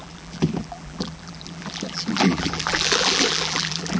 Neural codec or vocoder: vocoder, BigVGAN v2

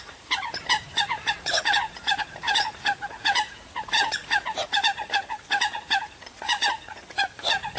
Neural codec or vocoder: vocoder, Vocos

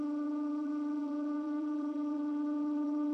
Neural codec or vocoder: vocoder, BigVGAN v2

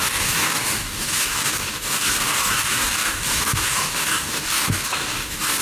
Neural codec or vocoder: codec, DAC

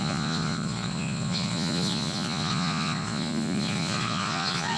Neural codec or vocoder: vocoder, Vocos